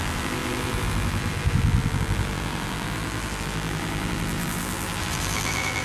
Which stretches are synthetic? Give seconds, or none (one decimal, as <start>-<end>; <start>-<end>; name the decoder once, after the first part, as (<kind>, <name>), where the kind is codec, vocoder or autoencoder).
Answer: 0.0-5.8 (vocoder, BigVGAN v2)